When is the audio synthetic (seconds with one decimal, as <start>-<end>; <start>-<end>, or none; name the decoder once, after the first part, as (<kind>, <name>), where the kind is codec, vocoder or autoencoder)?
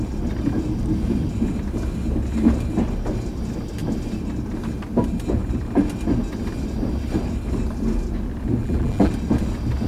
8.6-9.1 (vocoder, BigVGAN v2)